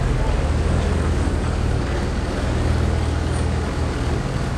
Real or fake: fake